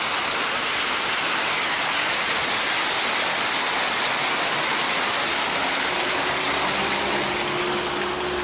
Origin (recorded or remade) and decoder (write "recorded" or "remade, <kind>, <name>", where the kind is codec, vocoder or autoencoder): recorded